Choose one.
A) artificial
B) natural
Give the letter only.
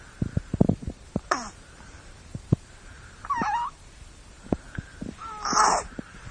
A